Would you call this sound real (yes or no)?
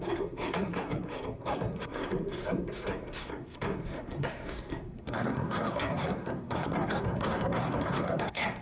no